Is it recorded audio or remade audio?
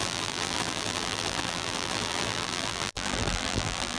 remade